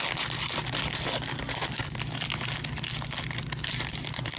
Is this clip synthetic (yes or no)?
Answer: no